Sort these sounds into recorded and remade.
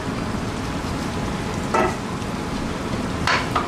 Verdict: recorded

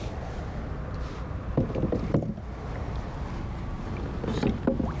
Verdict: recorded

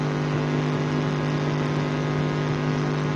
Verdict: remade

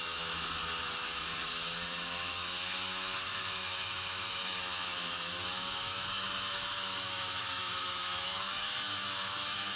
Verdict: remade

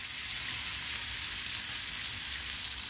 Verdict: recorded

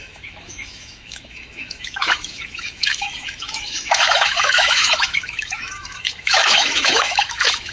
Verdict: remade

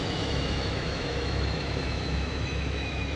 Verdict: remade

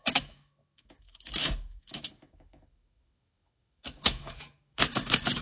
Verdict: remade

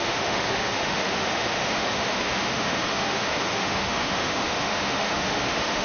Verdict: remade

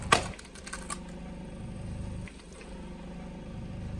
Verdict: recorded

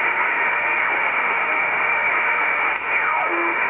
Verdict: remade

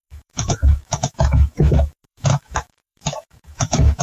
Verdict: remade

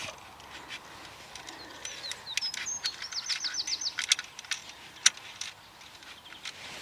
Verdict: recorded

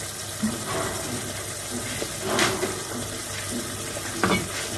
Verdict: recorded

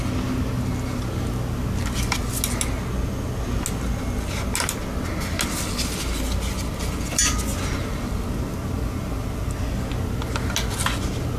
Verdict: recorded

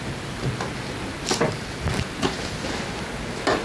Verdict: recorded